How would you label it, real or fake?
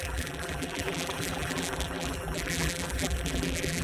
fake